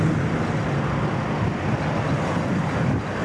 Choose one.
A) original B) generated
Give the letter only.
A